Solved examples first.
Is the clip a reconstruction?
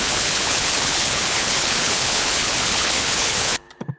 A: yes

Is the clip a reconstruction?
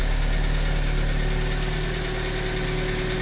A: no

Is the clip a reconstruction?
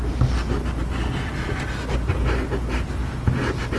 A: no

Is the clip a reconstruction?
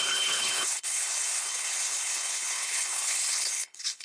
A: yes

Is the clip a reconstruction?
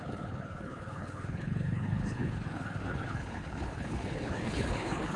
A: yes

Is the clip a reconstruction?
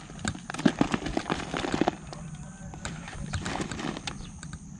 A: no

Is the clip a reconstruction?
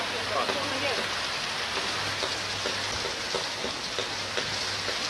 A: no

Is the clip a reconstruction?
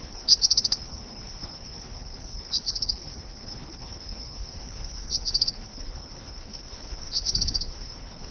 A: yes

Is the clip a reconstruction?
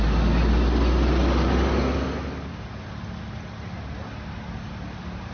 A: no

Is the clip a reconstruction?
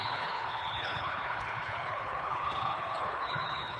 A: yes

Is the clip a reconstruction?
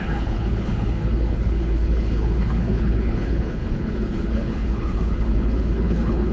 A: yes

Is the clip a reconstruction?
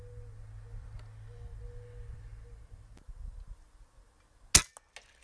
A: no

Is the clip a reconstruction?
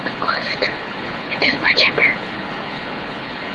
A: yes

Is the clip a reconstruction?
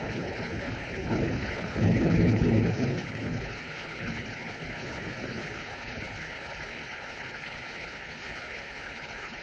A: yes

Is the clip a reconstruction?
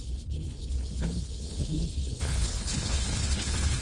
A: yes